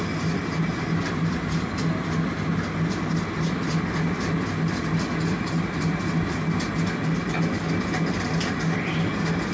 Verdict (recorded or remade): recorded